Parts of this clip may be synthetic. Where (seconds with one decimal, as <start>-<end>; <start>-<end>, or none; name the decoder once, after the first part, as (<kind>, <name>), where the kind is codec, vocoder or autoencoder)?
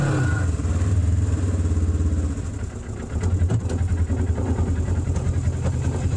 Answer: none